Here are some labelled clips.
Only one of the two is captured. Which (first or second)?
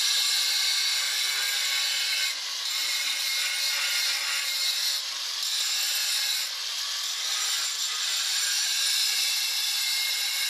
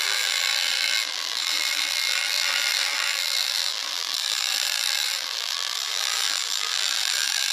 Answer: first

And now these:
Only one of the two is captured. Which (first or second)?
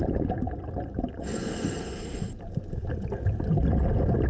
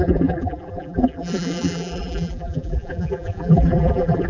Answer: first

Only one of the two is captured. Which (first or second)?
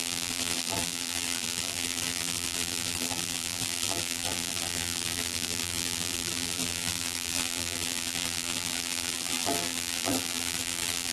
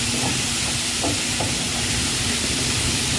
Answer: second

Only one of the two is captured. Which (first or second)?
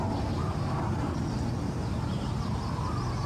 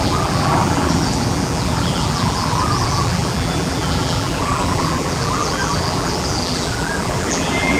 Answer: first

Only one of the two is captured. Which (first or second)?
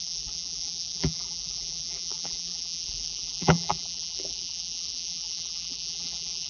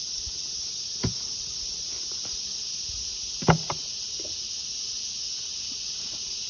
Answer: second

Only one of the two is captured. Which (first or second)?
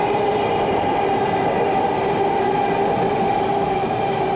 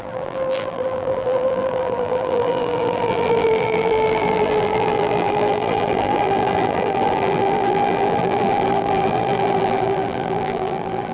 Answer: first